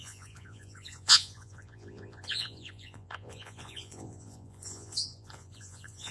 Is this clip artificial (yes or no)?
yes